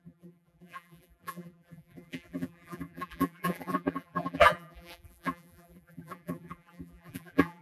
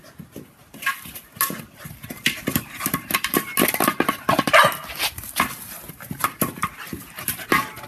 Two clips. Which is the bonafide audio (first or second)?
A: second